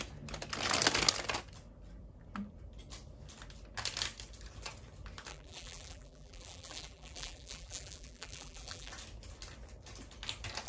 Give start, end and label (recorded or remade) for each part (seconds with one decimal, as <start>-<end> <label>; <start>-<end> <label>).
0.0-5.3 recorded; 5.3-8.9 remade; 8.9-10.7 recorded